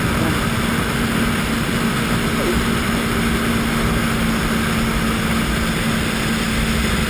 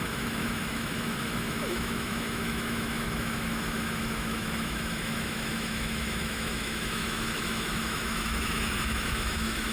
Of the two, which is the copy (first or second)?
second